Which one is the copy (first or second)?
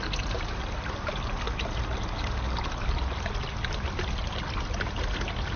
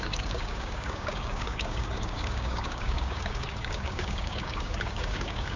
second